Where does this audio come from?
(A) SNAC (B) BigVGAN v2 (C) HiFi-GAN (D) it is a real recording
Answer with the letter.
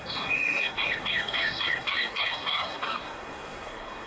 A